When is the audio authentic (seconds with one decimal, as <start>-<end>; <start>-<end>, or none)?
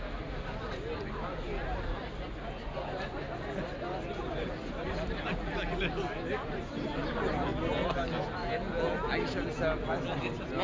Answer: 0.0-10.6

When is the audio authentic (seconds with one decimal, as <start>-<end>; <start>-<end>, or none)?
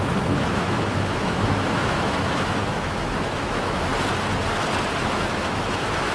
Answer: 3.9-5.0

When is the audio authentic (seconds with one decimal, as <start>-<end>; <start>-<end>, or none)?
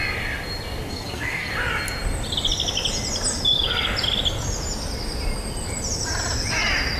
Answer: 0.0-0.9; 1.5-7.0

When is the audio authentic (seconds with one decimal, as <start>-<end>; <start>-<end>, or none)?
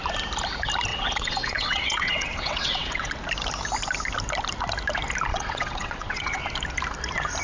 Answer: 0.0-0.9; 3.1-5.3; 6.4-7.4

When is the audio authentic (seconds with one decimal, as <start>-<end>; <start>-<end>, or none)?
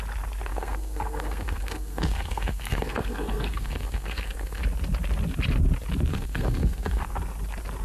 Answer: 0.0-0.5; 4.6-6.1; 7.0-7.8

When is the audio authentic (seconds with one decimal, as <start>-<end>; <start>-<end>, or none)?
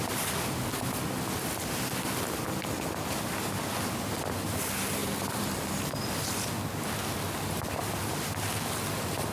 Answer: 0.0-5.0; 6.0-7.8; 8.4-9.3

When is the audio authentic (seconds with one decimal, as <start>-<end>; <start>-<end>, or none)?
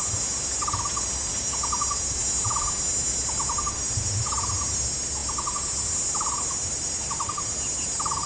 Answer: 0.0-8.3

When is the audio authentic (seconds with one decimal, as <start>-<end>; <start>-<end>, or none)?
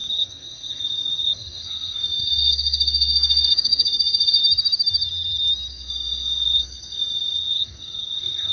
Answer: 4.4-5.7